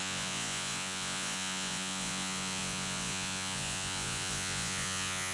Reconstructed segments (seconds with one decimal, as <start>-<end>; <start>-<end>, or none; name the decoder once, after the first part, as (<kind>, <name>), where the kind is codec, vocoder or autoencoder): 0.0-5.3 (vocoder, Vocos)